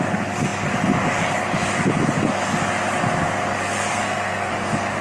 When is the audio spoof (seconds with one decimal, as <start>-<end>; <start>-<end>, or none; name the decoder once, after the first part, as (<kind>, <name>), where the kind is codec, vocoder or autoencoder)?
3.9-4.5 (codec, SNAC)